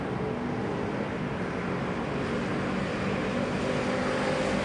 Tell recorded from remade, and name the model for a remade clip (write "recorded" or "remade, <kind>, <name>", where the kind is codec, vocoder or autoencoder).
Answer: recorded